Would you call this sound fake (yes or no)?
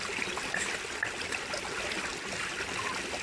no